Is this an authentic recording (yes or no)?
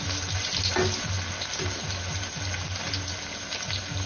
yes